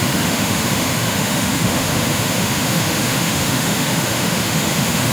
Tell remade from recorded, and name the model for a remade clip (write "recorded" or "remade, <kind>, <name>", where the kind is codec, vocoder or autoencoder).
remade, autoencoder, DAC-VAE